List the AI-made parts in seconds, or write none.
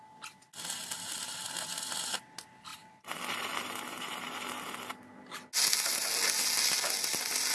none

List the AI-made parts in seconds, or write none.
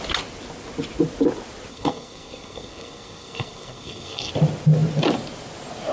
1.7-4.3 (codec, SNAC)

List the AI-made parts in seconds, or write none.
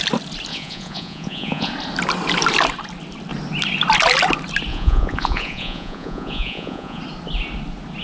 0.5-1.7 (vocoder, Vocos); 4.7-7.0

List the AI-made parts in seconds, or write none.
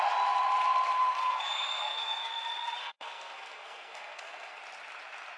1.2-2.3 (codec, SNAC); 2.8-4.6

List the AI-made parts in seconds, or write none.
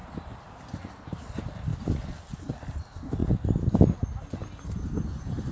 none